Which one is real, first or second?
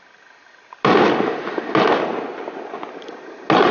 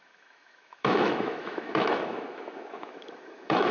first